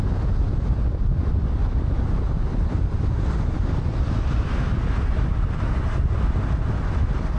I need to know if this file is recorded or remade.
recorded